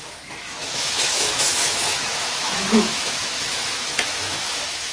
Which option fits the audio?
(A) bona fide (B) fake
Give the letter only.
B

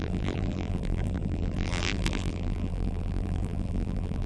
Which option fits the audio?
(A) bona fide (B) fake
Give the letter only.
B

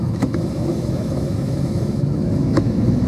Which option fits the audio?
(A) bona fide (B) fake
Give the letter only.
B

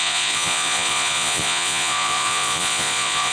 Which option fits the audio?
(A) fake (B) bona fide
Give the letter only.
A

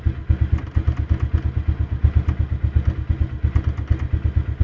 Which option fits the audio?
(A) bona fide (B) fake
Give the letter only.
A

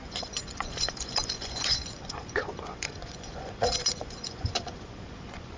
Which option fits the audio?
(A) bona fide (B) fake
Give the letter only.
B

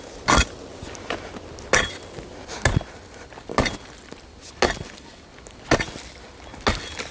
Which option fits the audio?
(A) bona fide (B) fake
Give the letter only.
A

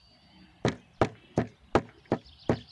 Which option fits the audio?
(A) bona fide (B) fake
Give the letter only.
A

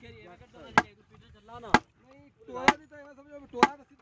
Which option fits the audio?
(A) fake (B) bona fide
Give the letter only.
B